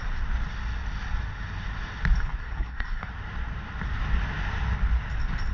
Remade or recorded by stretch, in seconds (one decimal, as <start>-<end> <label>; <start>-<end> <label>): 0.0-2.4 recorded; 2.4-3.1 remade; 3.1-5.5 recorded